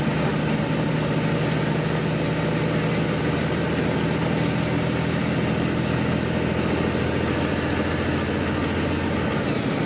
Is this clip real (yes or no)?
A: yes